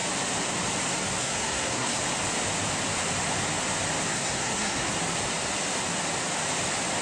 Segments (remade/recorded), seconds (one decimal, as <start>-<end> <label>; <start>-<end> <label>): 0.0-1.2 recorded; 1.2-2.0 remade; 2.0-4.1 recorded; 4.1-4.9 remade; 4.9-7.0 recorded